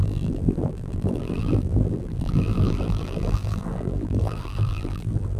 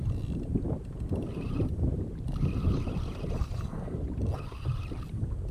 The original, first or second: second